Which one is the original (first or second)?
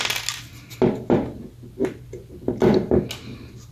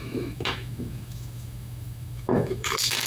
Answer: first